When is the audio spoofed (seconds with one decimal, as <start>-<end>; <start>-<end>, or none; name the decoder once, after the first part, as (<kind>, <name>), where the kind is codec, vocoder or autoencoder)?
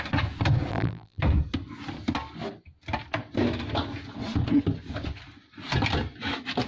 0.7-1.2 (vocoder, BigVGAN v2)